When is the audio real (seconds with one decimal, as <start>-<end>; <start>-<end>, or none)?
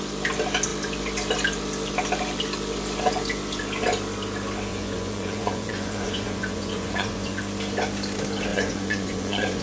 0.0-4.7; 7.4-8.5